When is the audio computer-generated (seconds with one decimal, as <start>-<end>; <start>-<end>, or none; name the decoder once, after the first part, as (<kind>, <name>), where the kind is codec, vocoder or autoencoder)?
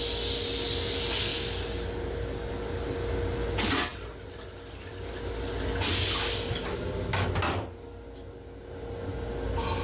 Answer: none